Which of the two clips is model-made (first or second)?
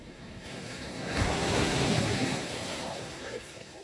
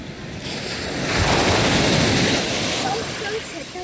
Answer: first